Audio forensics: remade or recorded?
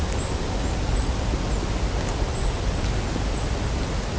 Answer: recorded